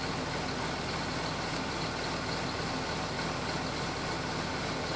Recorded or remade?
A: recorded